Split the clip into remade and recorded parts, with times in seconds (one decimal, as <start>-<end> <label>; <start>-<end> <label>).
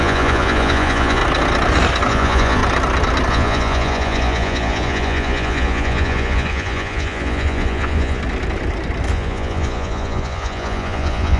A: 0.0-1.2 remade; 1.2-2.1 recorded; 2.1-2.6 remade; 2.6-3.3 recorded; 3.3-8.2 remade; 8.2-9.1 recorded; 9.1-11.4 remade